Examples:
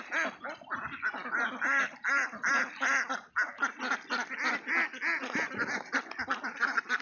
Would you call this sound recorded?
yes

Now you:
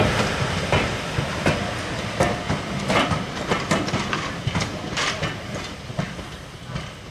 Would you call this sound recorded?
yes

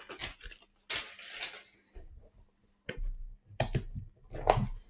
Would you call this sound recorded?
yes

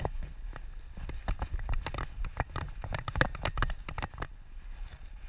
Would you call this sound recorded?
yes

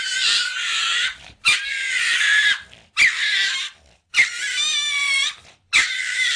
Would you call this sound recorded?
no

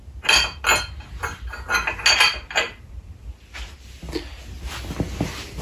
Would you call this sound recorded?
yes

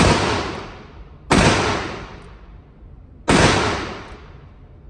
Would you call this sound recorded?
yes